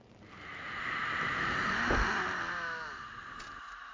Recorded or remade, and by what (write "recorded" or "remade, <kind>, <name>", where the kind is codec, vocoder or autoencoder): recorded